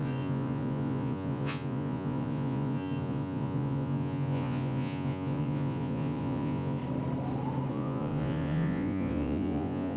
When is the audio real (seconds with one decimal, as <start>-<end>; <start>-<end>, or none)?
6.8-7.7